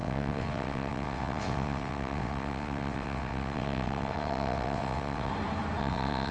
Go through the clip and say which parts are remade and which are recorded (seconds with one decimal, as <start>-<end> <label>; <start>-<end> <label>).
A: 0.0-5.3 remade; 5.3-5.8 recorded; 5.8-6.3 remade